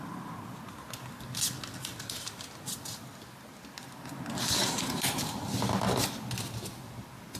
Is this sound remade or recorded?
recorded